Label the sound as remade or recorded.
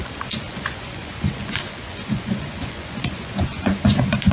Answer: remade